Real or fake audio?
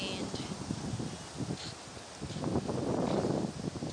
real